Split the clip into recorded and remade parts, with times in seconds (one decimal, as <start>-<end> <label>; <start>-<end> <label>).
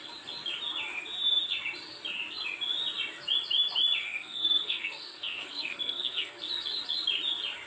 0.0-4.0 recorded; 4.0-6.4 remade; 6.4-7.7 recorded